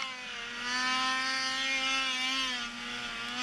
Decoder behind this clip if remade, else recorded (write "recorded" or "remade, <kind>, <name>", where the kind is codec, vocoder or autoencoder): recorded